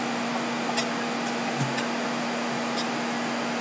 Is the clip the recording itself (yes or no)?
yes